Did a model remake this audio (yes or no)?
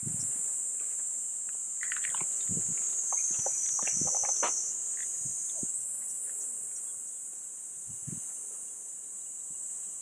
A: no